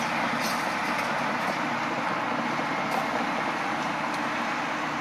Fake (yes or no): no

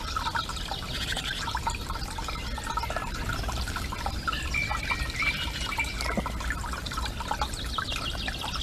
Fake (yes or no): no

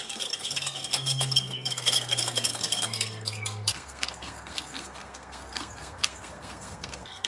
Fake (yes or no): yes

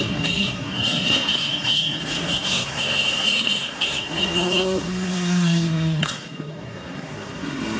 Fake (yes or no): yes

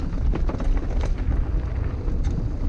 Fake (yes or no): no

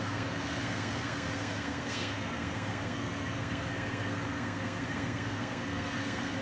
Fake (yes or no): yes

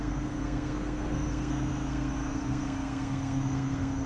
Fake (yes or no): yes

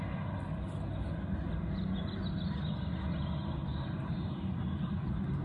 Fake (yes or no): no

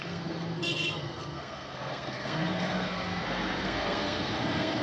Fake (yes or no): yes